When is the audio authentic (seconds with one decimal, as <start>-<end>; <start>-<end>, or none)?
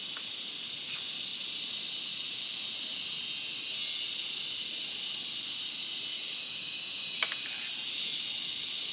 0.0-8.9